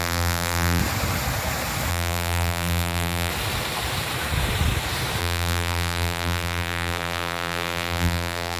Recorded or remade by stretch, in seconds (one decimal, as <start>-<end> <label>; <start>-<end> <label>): 0.0-0.8 remade; 0.8-1.9 recorded; 1.9-3.3 remade; 3.3-5.2 recorded; 5.2-8.6 remade